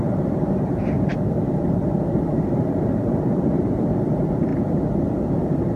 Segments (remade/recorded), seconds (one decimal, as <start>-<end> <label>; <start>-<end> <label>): 0.0-4.5 remade; 4.5-5.3 recorded; 5.3-5.8 remade